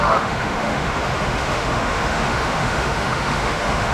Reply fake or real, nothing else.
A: fake